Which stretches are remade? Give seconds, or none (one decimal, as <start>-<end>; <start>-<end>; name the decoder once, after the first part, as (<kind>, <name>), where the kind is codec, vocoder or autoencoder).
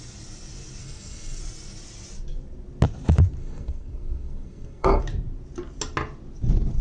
0.8-1.4 (codec, SNAC); 3.4-5.0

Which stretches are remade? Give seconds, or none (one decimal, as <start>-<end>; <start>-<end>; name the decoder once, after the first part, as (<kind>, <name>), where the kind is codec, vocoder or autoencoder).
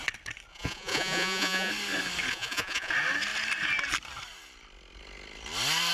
0.5-1.7 (vocoder, Vocos); 2.3-2.9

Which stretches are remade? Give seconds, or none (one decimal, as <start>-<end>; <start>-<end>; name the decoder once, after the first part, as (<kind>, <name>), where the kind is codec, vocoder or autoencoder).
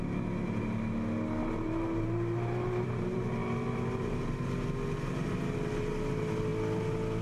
1.4-4.3 (vocoder, BigVGAN v2)